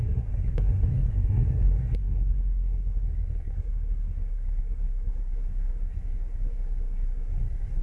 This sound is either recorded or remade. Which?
remade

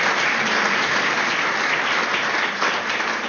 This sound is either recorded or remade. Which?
recorded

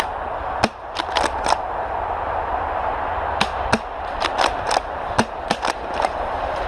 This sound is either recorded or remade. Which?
recorded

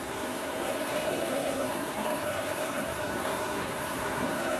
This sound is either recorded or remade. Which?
remade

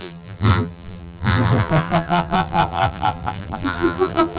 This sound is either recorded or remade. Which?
remade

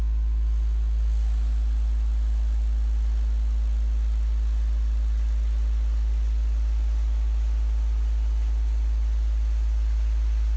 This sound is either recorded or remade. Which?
recorded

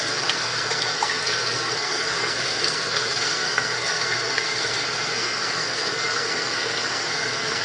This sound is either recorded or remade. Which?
remade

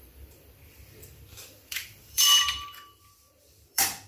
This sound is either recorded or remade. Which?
remade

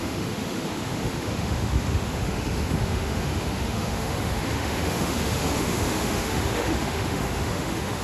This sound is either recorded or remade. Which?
remade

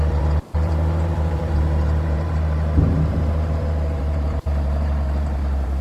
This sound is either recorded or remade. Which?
remade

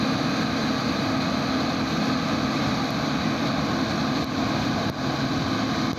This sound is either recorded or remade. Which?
recorded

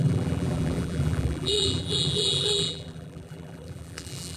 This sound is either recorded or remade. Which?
remade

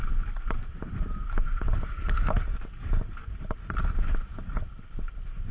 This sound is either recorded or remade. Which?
recorded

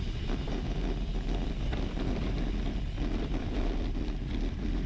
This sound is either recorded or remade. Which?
recorded